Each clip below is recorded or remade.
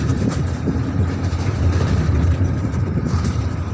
remade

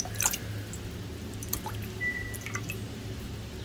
recorded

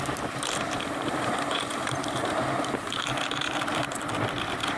remade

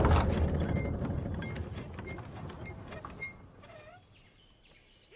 recorded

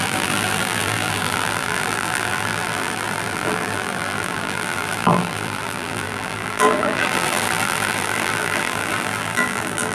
remade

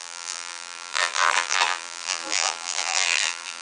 remade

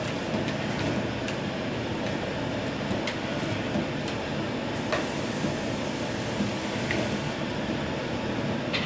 recorded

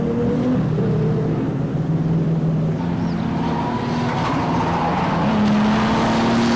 recorded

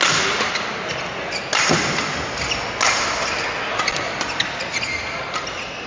recorded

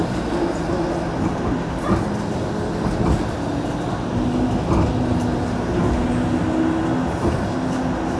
recorded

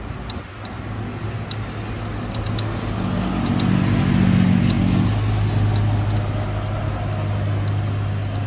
recorded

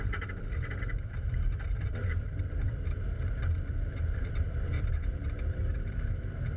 remade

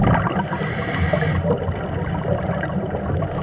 remade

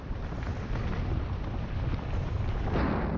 recorded